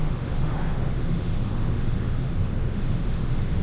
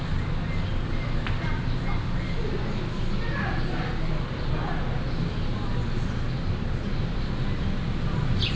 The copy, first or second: first